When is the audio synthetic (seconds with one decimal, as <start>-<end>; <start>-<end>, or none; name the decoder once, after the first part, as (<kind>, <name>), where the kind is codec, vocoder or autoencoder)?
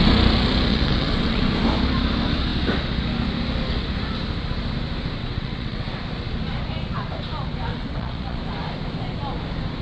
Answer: 0.7-1.4 (vocoder, WaveNeXt); 5.2-6.0; 7.7-8.4